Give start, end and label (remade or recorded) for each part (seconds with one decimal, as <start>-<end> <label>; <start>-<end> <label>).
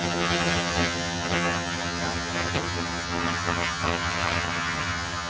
0.0-5.3 remade